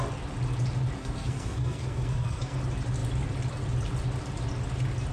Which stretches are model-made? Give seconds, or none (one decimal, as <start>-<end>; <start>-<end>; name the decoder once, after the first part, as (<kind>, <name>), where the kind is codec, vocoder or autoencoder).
1.0-2.6 (codec, SNAC)